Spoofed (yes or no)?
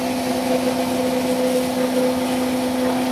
no